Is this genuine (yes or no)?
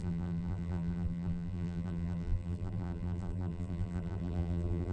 no